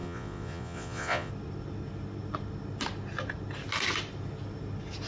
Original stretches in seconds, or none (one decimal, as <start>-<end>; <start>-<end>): 1.3-5.1